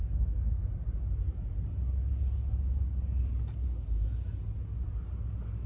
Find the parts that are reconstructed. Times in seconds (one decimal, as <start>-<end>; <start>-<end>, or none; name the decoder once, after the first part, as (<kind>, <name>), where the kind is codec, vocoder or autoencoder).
0.0-0.7 (codec, SNAC)